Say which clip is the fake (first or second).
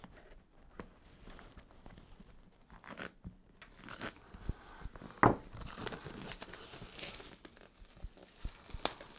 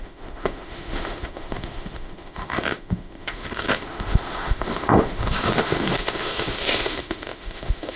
second